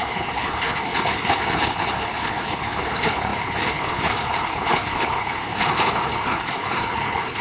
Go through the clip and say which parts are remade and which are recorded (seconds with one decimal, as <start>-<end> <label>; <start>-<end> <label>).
0.0-7.4 remade